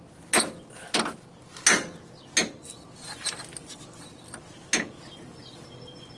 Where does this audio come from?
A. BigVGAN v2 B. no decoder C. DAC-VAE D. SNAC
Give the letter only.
B